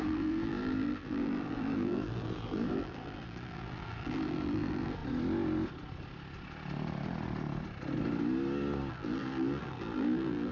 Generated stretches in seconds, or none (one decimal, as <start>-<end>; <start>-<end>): 0.0-5.0; 8.9-10.5